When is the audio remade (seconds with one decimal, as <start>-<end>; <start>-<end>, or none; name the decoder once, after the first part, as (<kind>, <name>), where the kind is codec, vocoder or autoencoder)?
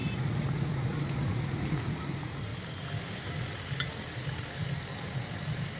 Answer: 0.0-2.5 (vocoder, Vocos)